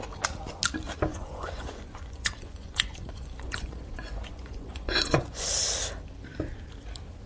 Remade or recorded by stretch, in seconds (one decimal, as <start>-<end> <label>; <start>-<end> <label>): 0.0-1.1 recorded; 1.1-5.5 remade; 5.5-7.3 recorded